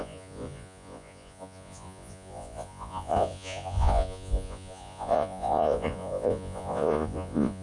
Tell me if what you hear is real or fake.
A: fake